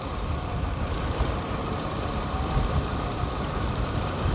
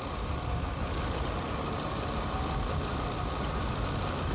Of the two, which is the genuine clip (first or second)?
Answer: second